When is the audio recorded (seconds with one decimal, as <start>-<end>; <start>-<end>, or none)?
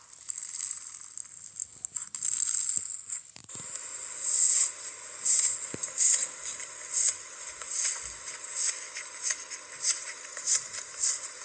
0.0-3.4; 4.4-9.9